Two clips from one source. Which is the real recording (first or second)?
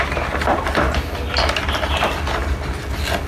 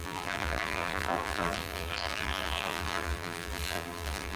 first